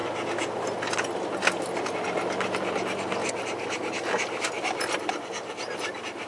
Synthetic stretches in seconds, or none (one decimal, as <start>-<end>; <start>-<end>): none